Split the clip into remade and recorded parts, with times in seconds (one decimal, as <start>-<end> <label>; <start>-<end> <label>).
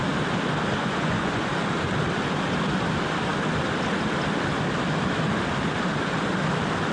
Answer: 0.0-0.8 recorded; 0.8-1.5 remade; 1.5-6.9 recorded